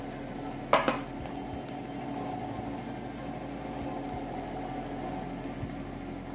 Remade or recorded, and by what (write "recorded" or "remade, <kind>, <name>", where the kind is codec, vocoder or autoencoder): recorded